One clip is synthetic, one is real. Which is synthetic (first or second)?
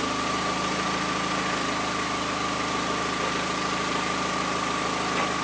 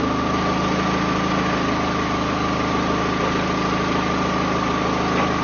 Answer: first